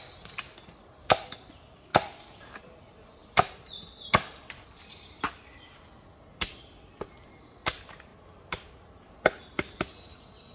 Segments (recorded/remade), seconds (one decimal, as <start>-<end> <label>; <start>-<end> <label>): 0.0-8.1 recorded; 8.1-9.8 remade; 9.8-10.5 recorded